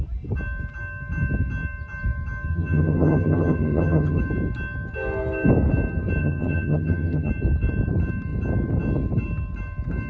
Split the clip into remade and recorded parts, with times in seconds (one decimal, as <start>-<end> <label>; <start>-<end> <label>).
0.0-2.5 recorded; 2.5-4.2 remade; 4.2-6.2 recorded; 6.2-7.3 remade; 7.3-10.1 recorded